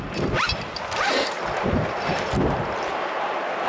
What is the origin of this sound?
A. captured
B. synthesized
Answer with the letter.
A